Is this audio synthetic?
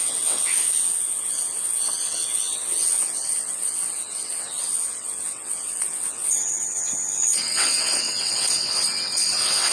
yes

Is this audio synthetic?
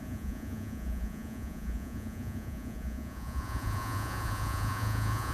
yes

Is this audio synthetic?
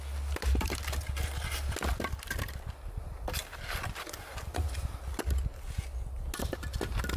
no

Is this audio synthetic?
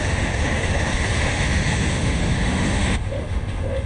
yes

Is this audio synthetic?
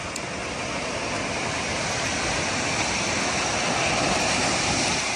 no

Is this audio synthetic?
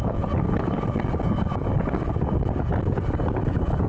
no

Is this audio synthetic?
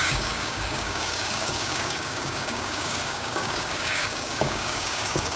yes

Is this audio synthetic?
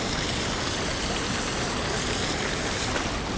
no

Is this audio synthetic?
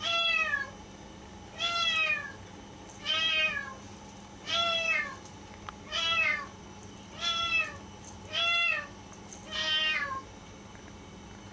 no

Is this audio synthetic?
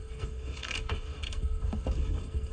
yes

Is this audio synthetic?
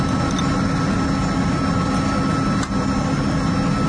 no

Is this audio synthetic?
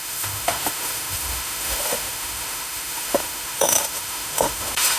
yes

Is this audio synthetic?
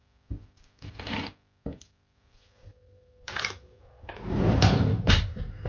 yes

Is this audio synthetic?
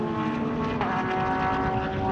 no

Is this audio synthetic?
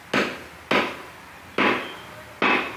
no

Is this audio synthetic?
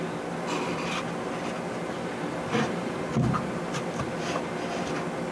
no